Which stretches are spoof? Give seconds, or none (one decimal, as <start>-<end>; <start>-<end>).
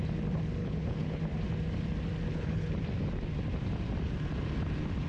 0.6-1.2; 2.3-2.8